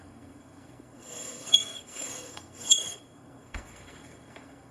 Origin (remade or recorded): remade